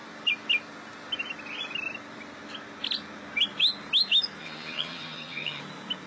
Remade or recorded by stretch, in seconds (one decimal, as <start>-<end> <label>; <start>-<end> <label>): 0.0-4.4 recorded; 4.4-5.6 remade; 5.6-6.1 recorded